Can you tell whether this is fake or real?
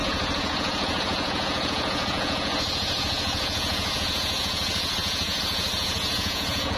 fake